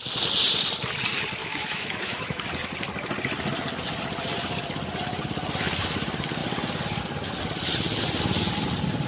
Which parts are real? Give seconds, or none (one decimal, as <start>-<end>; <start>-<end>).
0.0-1.4; 2.4-9.1